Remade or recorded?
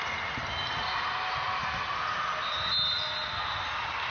recorded